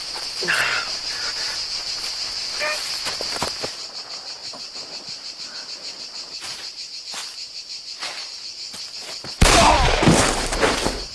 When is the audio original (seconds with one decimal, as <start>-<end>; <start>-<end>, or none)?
0.0-11.1